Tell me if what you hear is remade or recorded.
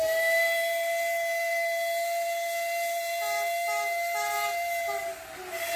recorded